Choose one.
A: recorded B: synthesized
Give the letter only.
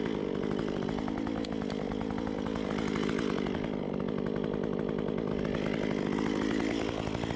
A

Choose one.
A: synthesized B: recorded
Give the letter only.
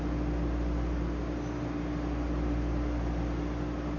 B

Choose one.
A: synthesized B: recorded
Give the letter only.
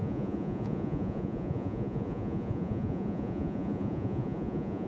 A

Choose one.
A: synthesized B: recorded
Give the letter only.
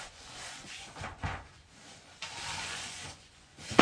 A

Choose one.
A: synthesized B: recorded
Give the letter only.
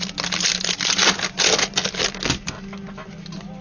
B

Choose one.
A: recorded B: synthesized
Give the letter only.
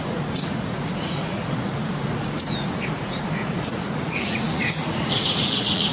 B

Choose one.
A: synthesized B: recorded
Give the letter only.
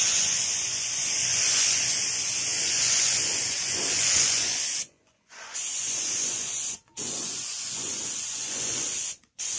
A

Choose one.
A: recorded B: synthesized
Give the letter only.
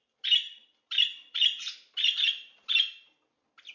A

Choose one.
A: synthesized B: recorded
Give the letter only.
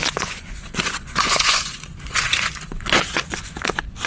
A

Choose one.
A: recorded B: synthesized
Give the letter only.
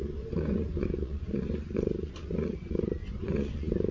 B